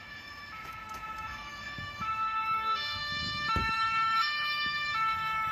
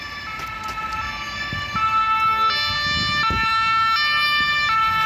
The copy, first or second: first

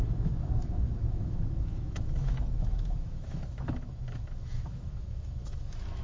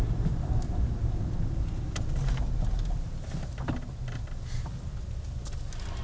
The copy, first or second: first